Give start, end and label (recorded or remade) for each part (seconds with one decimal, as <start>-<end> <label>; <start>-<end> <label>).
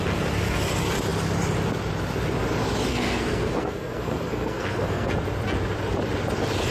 0.0-2.9 recorded; 2.9-5.1 remade; 5.1-6.7 recorded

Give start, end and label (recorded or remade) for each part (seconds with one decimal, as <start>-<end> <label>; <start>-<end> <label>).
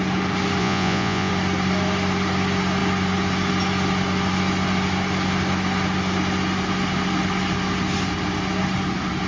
0.0-0.6 recorded; 0.6-1.3 remade; 1.3-9.3 recorded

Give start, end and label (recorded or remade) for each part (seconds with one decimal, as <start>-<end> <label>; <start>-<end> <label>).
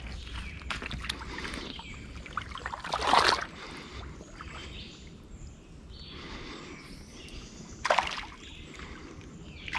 0.0-9.8 recorded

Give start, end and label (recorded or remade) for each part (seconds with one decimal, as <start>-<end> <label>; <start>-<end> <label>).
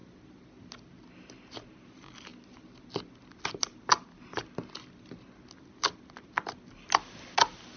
0.0-7.8 recorded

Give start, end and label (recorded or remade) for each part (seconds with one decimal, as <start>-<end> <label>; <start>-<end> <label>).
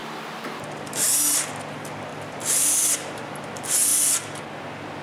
0.0-5.0 recorded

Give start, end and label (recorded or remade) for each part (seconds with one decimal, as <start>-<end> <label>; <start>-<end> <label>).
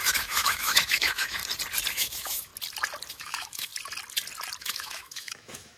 0.0-1.4 remade; 1.4-1.9 recorded; 1.9-2.5 remade; 2.5-3.1 recorded; 3.1-3.7 remade; 3.7-4.6 recorded; 4.6-5.8 remade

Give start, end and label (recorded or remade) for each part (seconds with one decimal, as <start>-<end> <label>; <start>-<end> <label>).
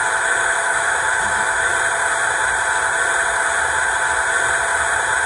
0.0-1.7 remade; 1.7-5.3 recorded